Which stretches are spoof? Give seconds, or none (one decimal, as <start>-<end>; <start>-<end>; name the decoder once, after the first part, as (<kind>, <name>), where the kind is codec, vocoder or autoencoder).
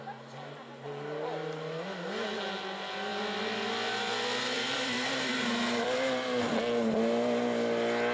3.1-6.5 (vocoder, BigVGAN v2)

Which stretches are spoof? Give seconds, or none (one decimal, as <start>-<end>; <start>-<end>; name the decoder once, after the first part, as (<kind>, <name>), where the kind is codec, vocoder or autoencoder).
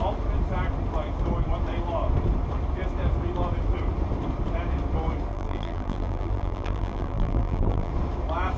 5.3-7.9 (vocoder, BigVGAN v2)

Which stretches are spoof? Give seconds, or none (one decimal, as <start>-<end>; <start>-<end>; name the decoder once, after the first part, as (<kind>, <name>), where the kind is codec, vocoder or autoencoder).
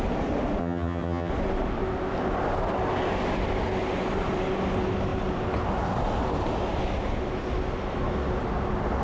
0.6-1.3 (vocoder, HiFi-GAN)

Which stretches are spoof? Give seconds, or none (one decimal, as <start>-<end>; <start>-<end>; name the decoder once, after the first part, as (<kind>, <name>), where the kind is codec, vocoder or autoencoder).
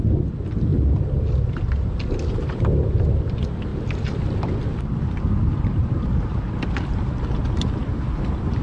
none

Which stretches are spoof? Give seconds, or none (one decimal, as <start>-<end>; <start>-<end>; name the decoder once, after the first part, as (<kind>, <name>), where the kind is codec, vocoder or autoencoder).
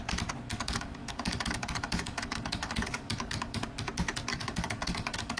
0.5-3.7 (codec, DAC); 4.3-5.4